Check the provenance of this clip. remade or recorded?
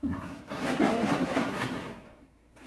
remade